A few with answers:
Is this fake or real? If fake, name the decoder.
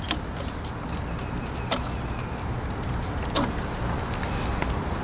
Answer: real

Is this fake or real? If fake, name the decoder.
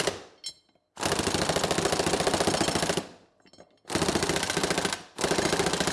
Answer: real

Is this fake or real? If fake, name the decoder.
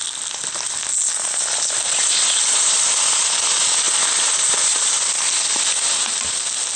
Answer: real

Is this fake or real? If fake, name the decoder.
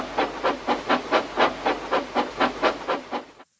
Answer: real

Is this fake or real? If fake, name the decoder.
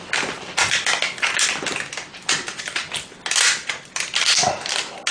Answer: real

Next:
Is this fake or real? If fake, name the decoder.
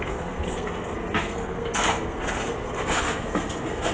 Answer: fake, codec, SNAC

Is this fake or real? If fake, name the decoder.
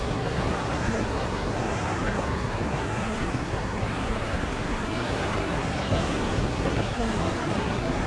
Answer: fake, codec, SNAC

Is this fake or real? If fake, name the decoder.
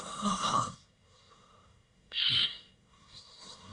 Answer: fake, codec, SNAC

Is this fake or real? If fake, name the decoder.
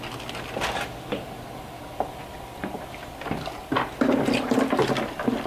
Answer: real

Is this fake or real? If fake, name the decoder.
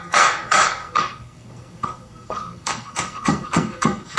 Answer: fake, codec, SNAC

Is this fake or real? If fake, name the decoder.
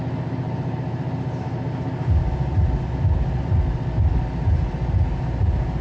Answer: real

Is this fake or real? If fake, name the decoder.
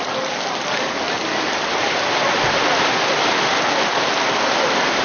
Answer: real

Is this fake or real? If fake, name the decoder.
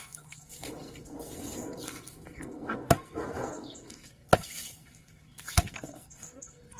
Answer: fake, codec, SNAC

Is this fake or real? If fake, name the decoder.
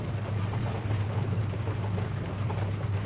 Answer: real